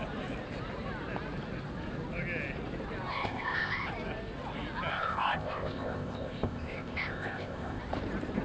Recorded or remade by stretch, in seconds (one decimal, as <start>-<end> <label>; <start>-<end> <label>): 0.0-3.1 recorded; 3.1-3.9 remade; 3.9-4.9 recorded; 4.9-7.8 remade; 7.8-8.4 recorded